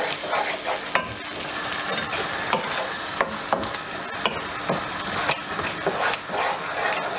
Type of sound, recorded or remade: recorded